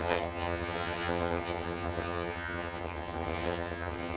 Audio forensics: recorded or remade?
remade